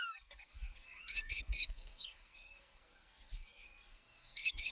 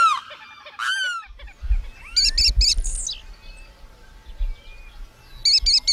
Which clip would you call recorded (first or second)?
second